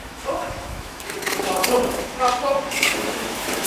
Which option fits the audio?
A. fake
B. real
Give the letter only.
A